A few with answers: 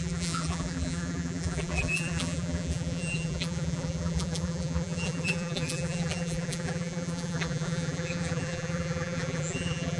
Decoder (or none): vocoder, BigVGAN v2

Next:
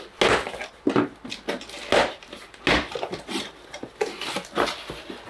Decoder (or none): none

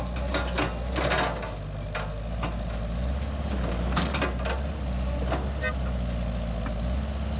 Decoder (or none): none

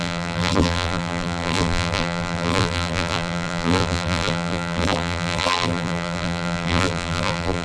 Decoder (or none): vocoder, BigVGAN v2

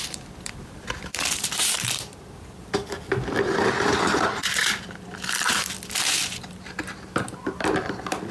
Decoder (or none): vocoder, BigVGAN v2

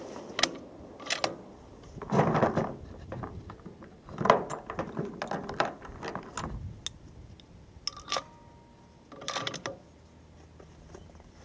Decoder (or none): none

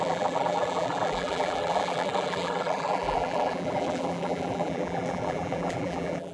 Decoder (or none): vocoder, BigVGAN v2